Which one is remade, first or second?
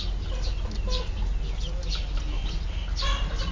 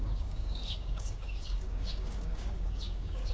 second